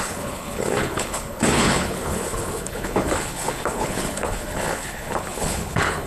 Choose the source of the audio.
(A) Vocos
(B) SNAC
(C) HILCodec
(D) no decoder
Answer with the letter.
C